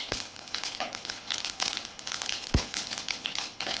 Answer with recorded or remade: remade